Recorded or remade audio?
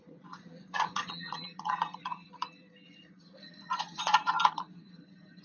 remade